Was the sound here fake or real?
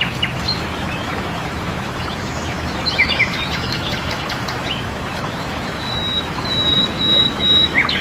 fake